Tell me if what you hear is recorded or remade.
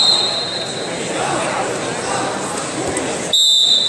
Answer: recorded